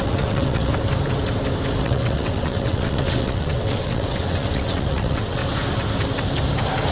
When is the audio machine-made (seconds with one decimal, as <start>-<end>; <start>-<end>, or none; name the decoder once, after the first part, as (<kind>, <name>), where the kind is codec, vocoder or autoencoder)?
0.0-0.7 (vocoder, WaveNeXt); 1.8-5.4